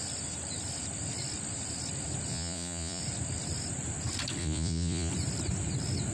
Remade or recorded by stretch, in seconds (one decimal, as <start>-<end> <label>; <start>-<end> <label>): 0.0-2.3 recorded; 2.3-3.0 remade; 3.0-4.4 recorded; 4.4-5.1 remade; 5.1-6.1 recorded